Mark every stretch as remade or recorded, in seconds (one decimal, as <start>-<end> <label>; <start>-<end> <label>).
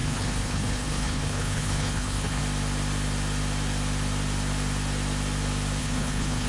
0.0-2.4 remade; 2.4-5.8 recorded; 5.8-6.5 remade